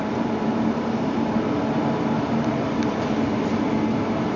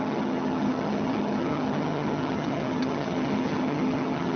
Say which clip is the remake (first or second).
second